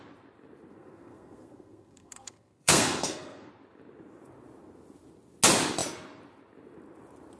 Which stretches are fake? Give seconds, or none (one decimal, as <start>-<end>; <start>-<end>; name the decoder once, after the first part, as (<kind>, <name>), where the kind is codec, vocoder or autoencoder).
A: 0.7-3.5 (codec, SNAC)